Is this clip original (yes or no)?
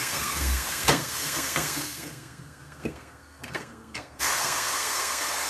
no